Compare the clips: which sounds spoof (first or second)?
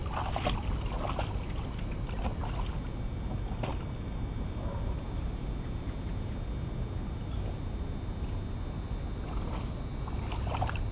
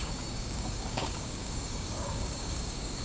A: second